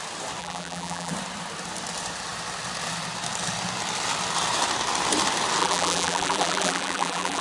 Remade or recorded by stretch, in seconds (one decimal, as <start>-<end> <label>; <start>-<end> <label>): 0.0-0.4 recorded; 0.4-1.1 remade; 1.1-5.6 recorded; 5.6-7.4 remade